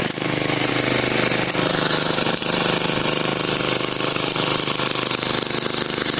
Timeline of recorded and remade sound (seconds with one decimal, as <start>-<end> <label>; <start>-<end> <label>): 0.0-0.7 remade; 0.7-1.7 recorded; 1.7-2.2 remade; 2.2-6.2 recorded